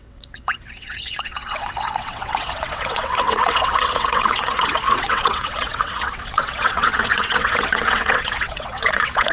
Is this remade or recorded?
remade